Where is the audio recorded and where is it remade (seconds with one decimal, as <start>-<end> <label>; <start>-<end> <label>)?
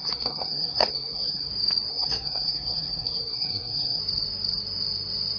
0.0-1.5 remade; 1.5-1.9 recorded; 1.9-4.0 remade; 4.0-5.4 recorded